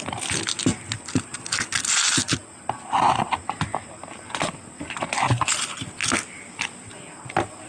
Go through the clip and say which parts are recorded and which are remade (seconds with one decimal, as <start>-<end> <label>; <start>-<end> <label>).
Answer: 0.0-7.7 recorded